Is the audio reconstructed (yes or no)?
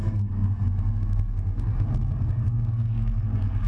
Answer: yes